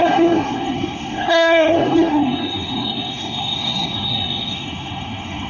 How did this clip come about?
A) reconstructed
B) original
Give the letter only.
A